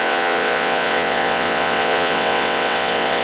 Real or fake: fake